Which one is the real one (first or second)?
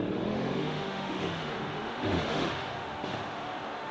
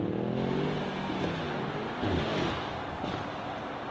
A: second